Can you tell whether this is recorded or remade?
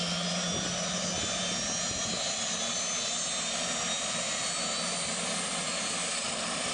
recorded